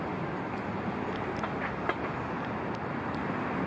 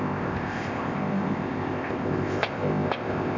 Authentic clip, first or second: first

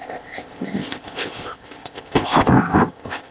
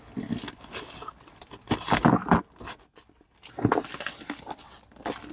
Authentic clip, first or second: second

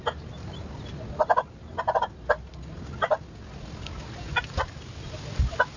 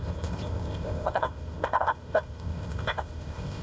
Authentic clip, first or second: first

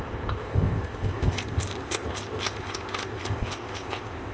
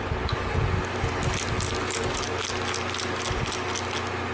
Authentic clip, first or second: second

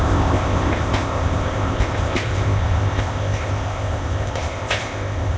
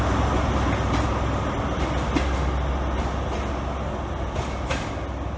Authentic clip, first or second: second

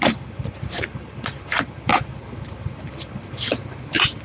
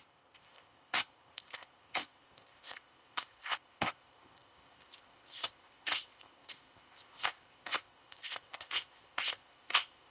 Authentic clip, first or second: first